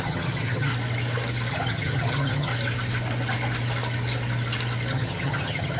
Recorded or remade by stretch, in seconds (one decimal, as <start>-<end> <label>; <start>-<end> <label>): 0.0-0.7 remade; 0.7-1.5 recorded; 1.5-2.5 remade; 2.5-4.9 recorded; 4.9-5.8 remade